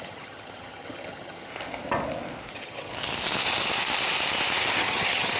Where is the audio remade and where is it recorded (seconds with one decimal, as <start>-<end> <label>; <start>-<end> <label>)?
0.0-1.5 remade; 1.5-2.5 recorded; 2.5-2.9 remade; 2.9-4.7 recorded; 4.7-5.4 remade